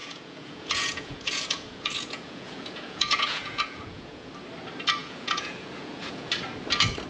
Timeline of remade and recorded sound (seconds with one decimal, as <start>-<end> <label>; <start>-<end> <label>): 0.0-4.3 remade; 4.3-5.0 recorded; 5.0-6.3 remade; 6.3-7.1 recorded